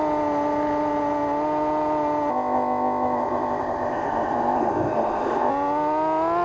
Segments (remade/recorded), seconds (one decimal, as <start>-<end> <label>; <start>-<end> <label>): 0.0-2.3 recorded; 2.3-5.5 remade; 5.5-6.4 recorded

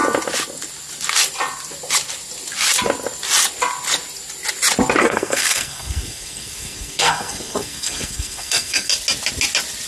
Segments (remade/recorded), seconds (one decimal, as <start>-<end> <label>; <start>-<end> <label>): 0.0-5.0 recorded; 5.0-8.9 remade; 8.9-9.9 recorded

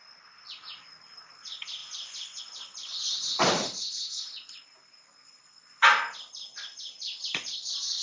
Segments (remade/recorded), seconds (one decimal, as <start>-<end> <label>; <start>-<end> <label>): 0.0-1.8 recorded; 1.8-2.4 remade; 2.4-2.9 recorded; 2.9-3.4 remade; 3.4-8.0 recorded